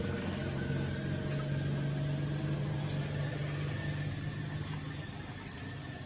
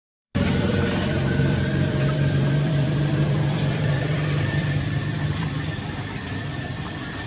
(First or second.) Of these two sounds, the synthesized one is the second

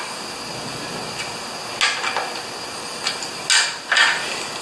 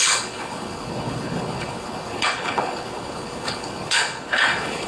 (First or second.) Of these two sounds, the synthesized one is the second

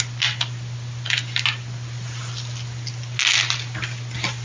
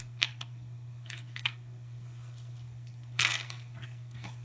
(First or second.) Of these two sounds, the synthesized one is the second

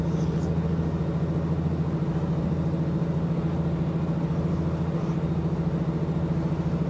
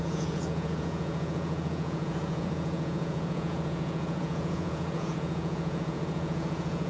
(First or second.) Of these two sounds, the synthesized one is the second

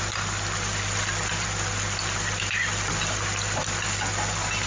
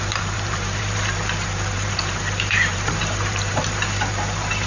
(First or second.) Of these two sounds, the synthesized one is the second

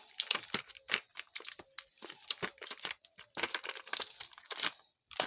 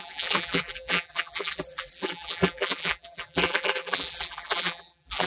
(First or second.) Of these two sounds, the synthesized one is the second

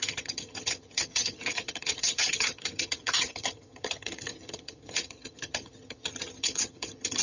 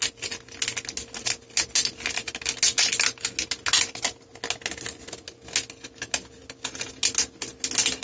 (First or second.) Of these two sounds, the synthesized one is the first